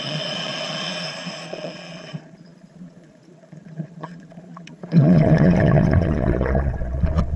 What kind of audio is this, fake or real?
fake